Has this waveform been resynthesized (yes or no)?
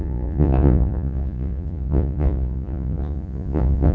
yes